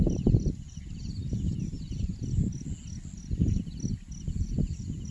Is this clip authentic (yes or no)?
yes